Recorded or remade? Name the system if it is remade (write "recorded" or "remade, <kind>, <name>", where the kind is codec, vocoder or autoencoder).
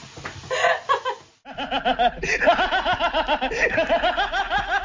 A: recorded